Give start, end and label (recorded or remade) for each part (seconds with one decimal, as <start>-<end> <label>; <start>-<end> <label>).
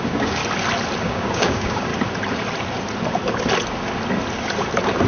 0.0-0.4 remade; 0.4-1.0 recorded; 1.0-1.9 remade; 1.9-5.1 recorded